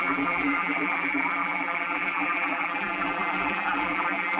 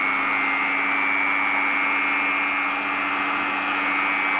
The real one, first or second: second